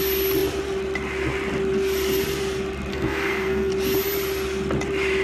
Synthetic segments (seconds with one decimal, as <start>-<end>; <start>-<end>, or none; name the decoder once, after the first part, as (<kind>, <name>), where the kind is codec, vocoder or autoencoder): 2.9-3.7 (codec, SNAC)